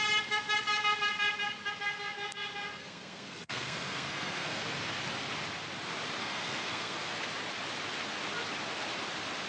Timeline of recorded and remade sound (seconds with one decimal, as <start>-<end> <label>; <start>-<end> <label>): 0.0-2.8 recorded; 2.8-4.6 remade; 4.6-6.2 recorded; 6.2-7.2 remade; 7.2-9.5 recorded